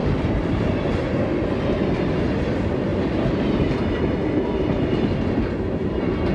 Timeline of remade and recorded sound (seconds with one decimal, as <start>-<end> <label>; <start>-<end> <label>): 0.0-0.6 remade; 0.6-2.9 recorded; 2.9-3.7 remade; 3.7-6.3 recorded